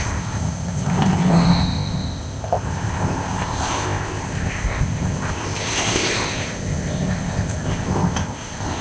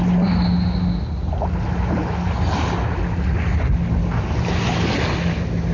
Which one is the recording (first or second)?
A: second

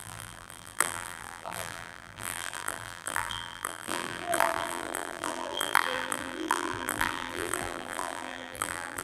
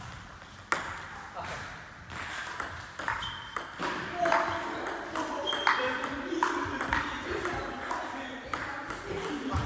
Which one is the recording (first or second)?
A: second